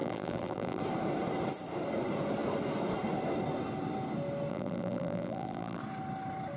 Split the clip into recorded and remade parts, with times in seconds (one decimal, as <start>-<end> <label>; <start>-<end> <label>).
0.0-0.8 remade; 0.8-4.5 recorded; 4.5-5.8 remade; 5.8-6.6 recorded